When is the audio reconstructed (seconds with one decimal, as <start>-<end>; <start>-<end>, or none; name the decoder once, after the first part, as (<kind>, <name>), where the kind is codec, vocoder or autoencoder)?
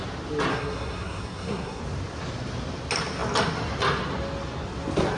0.5-1.8 (codec, SNAC)